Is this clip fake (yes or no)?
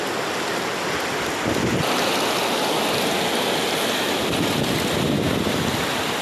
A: no